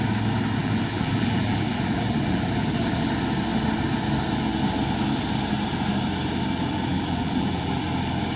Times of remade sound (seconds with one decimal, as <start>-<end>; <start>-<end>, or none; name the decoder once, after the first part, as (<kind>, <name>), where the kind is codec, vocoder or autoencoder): 0.6-3.1 (vocoder, BigVGAN v2); 6.9-7.8